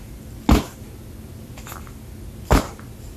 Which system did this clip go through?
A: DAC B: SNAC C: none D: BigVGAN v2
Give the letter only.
C